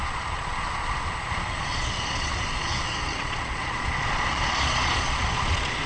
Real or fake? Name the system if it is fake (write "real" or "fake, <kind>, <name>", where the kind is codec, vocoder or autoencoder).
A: fake, vocoder, Vocos